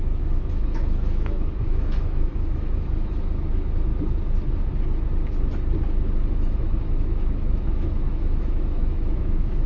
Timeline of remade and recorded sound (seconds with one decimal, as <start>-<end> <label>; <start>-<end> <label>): 0.0-3.9 remade; 3.9-6.3 recorded; 6.3-9.7 remade